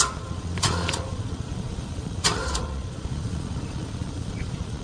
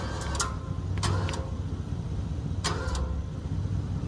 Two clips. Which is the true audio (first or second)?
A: second